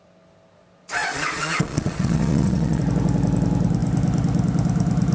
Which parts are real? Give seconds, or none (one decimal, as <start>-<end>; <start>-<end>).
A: 0.0-1.0; 2.8-5.1